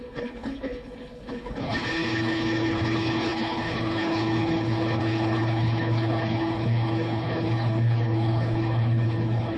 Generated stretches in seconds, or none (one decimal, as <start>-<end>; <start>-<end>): 0.0-9.6